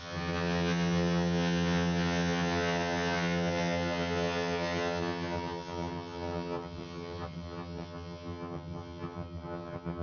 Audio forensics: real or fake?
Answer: fake